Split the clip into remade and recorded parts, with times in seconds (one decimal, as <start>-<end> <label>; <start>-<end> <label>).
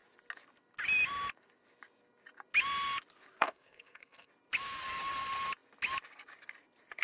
0.0-3.4 recorded; 3.4-4.3 remade; 4.3-7.0 recorded